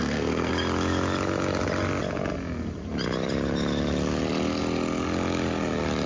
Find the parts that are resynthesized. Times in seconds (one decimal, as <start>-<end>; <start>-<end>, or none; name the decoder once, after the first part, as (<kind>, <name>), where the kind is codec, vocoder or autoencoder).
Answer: 0.0-0.5 (codec, SNAC)